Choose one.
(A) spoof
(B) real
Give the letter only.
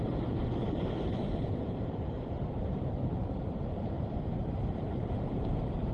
A